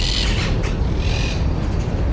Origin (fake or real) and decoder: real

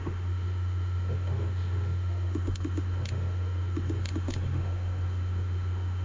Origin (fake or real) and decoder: fake, autoencoder, DAC-VAE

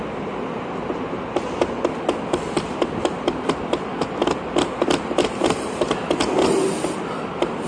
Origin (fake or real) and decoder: real